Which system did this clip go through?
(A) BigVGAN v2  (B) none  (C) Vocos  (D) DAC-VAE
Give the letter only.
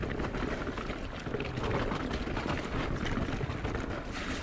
B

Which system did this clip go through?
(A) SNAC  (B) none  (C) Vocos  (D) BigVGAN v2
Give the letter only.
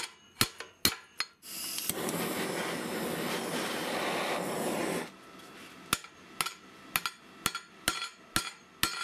B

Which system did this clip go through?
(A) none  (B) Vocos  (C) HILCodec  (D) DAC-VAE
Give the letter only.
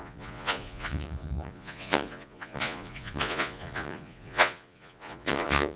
B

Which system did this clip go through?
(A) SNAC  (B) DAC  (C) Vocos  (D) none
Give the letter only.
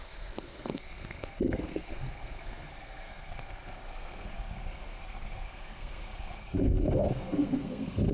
A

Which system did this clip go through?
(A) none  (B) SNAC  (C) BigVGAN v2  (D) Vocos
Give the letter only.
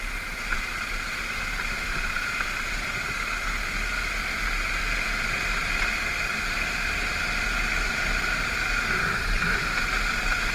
A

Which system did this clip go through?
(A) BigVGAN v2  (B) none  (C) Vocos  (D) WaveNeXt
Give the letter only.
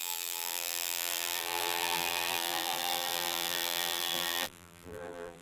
A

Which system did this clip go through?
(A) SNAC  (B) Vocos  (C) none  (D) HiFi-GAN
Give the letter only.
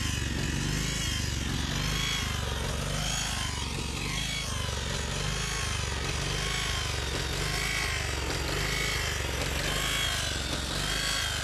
C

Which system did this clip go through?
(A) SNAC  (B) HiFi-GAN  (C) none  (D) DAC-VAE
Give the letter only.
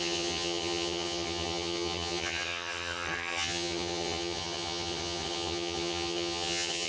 B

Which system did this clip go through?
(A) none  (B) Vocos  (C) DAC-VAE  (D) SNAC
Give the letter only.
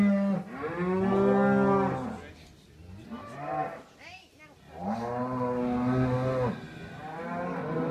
A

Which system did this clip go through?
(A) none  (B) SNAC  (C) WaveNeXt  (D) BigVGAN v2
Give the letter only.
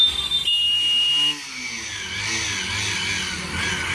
A